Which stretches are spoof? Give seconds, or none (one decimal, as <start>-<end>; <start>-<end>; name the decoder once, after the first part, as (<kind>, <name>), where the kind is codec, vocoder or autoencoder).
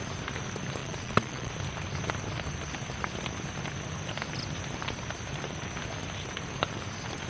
0.8-1.5 (vocoder, Vocos)